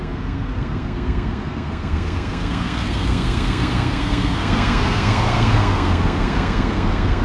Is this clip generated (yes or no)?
yes